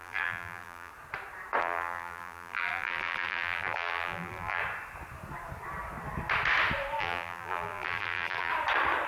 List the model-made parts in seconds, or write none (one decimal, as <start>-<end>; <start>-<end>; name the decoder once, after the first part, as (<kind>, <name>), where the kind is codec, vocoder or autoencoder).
0.0-0.9 (vocoder, BigVGAN v2); 1.6-4.6; 7.0-8.5